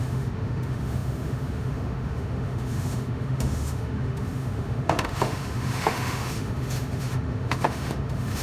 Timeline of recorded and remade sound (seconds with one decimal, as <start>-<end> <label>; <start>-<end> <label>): 0.0-8.4 remade